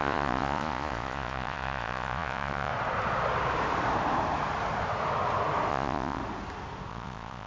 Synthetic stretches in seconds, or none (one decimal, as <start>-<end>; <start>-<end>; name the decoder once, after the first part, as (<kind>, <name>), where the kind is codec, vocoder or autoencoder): 0.0-2.7 (vocoder, Vocos); 5.7-6.2; 6.9-7.5